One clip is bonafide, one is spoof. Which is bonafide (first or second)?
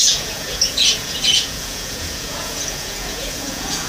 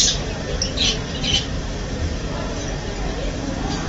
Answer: second